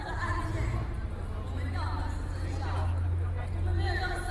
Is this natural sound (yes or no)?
yes